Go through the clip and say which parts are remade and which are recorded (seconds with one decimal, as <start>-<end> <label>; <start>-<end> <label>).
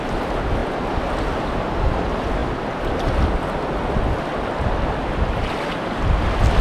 0.0-6.6 recorded